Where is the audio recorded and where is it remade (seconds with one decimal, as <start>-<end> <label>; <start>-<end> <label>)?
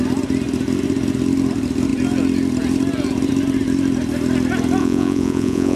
0.0-4.8 recorded; 4.8-5.8 remade